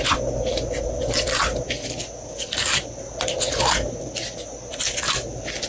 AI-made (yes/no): no